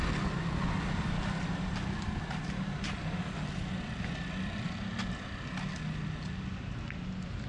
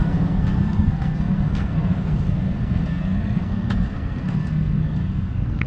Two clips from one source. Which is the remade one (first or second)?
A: second